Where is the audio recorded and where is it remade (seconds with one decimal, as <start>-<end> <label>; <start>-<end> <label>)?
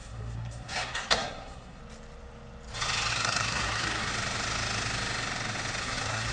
0.0-1.8 remade; 1.8-3.1 recorded; 3.1-4.1 remade; 4.1-5.8 recorded; 5.8-6.3 remade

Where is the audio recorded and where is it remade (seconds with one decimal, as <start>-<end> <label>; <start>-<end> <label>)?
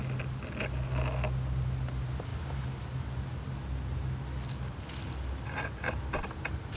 0.0-2.3 recorded; 2.3-6.8 remade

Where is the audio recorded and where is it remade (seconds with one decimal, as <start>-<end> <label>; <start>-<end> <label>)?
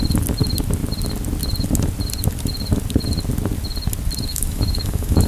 0.0-4.3 recorded; 4.3-5.3 remade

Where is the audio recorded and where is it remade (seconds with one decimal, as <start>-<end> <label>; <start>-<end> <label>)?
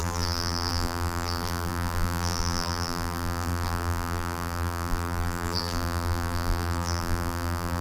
0.0-7.8 remade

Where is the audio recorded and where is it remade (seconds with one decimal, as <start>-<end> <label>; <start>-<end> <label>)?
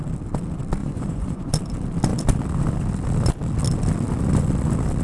0.0-0.8 recorded; 0.8-1.5 remade; 1.5-5.0 recorded